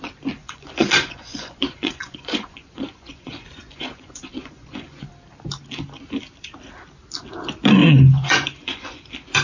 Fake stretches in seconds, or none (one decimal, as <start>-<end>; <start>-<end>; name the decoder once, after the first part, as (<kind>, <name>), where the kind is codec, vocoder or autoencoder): 0.4-5.1 (vocoder, Vocos); 7.8-9.0